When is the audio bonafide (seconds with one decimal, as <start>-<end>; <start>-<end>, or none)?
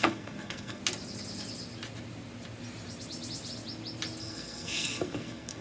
0.8-4.2